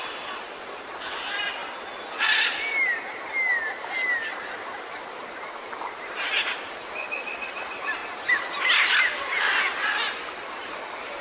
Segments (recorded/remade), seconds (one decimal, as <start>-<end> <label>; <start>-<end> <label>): 0.0-11.2 recorded